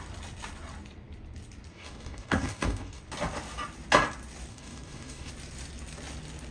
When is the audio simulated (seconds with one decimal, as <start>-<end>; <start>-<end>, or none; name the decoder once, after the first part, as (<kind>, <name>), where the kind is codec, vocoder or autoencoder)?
1.7-3.0 (codec, DAC); 4.5-5.3